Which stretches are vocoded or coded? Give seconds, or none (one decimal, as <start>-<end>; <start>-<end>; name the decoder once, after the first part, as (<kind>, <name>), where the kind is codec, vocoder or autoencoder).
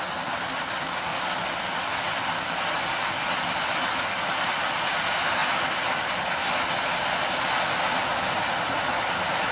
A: none